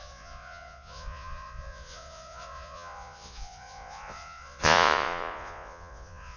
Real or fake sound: fake